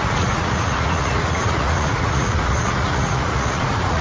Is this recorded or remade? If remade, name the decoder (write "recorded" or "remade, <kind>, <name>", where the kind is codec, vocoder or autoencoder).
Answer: remade, vocoder, Vocos